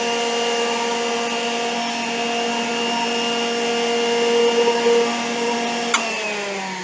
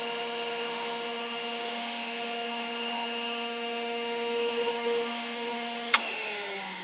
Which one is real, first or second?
first